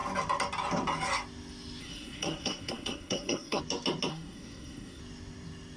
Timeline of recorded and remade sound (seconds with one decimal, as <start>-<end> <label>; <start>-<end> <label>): 0.0-1.8 recorded; 1.8-3.6 remade; 3.6-4.1 recorded; 4.1-5.0 remade; 5.0-5.8 recorded